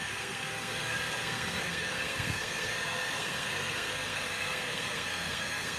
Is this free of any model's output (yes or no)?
no